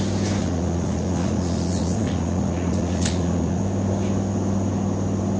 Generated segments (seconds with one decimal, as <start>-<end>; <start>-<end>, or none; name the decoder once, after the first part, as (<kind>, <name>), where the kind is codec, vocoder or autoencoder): 0.4-3.6 (vocoder, Vocos)